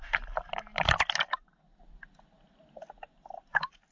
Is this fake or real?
real